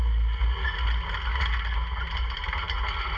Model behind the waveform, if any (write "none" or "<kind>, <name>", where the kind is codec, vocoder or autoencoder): none